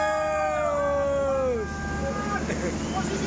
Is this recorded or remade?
recorded